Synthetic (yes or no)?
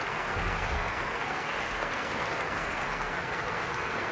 yes